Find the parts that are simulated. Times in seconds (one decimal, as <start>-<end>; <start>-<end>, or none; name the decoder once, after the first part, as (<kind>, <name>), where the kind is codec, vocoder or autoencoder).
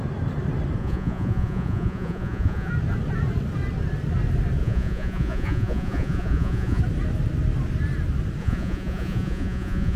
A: 0.8-2.7 (vocoder, Vocos); 4.6-6.8; 8.4-10.0